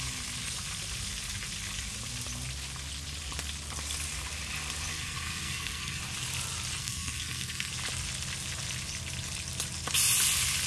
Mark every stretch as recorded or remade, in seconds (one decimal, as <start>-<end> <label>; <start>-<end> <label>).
0.0-4.9 recorded; 4.9-6.0 remade; 6.0-6.8 recorded; 6.8-7.7 remade; 7.7-10.7 recorded